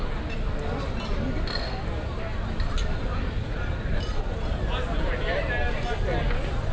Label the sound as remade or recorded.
recorded